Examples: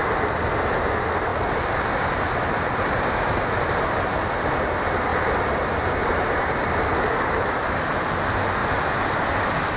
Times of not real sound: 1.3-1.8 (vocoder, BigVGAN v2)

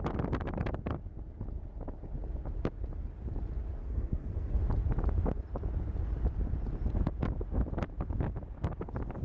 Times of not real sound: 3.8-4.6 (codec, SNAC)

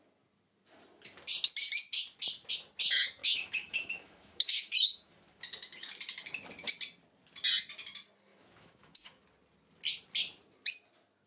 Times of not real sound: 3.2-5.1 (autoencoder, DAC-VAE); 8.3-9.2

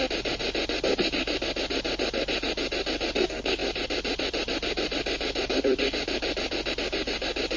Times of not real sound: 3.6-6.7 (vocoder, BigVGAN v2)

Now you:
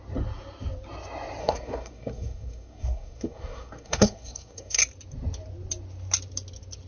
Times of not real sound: 1.4-4.8 (codec, SNAC)

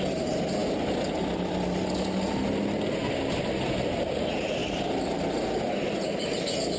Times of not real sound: none

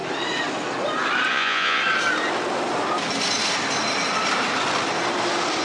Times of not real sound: 1.3-1.8 (vocoder, Vocos)

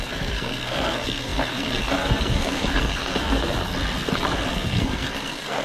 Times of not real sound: 0.0-3.7 (codec, SNAC); 4.5-5.6